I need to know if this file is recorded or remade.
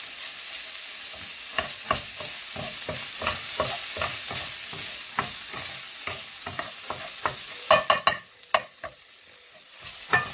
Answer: recorded